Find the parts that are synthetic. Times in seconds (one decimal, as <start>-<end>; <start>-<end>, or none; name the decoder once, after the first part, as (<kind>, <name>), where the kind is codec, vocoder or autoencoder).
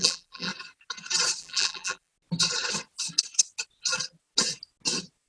0.0-0.5 (vocoder, BigVGAN v2); 1.4-2.1